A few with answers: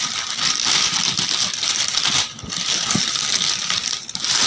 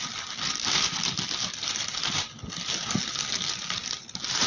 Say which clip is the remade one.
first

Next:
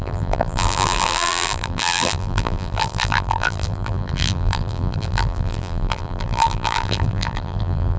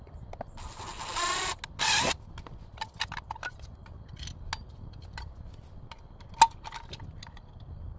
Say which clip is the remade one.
first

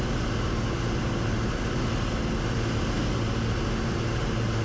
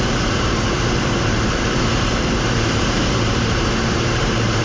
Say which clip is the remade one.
second